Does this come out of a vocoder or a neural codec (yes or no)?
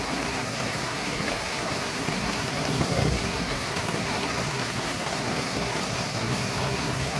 yes